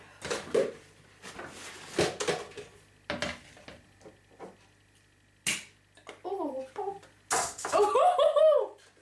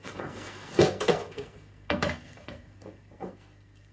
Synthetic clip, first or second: second